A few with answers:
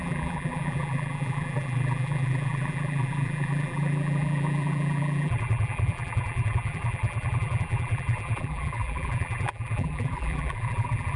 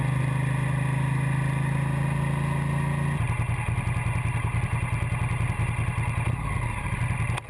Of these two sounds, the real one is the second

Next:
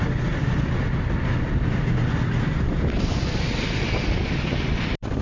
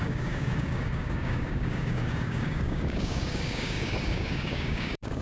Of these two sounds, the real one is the first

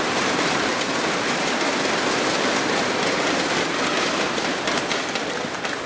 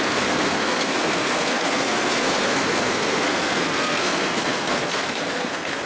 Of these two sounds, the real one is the first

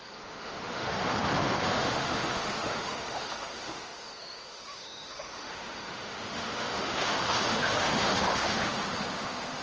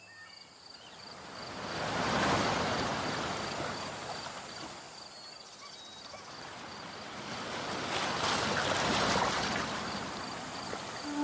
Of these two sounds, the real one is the second